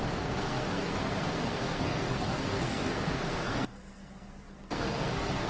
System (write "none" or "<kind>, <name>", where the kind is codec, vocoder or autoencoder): codec, SNAC